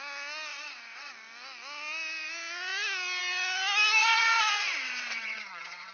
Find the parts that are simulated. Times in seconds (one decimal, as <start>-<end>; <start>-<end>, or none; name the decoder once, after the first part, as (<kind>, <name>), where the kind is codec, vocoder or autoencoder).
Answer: 0.5-1.1 (vocoder, WaveNeXt); 4.0-5.9